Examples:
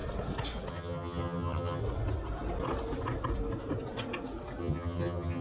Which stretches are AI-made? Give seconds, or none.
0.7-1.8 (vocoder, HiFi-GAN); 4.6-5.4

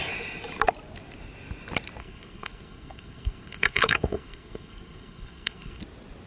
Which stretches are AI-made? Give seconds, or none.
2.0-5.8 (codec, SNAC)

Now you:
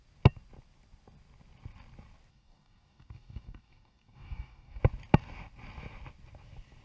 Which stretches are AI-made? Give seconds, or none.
2.3-4.8 (codec, DAC)

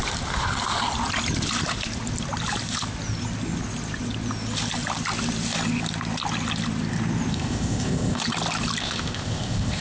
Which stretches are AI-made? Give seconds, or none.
7.3-8.2 (codec, ZipCodec); 8.8-9.8

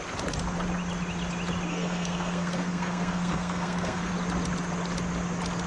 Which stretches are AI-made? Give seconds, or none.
1.7-4.1 (codec, SNAC)

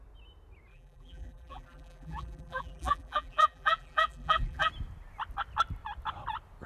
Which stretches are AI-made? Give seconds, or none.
0.7-4.7 (vocoder, BigVGAN v2)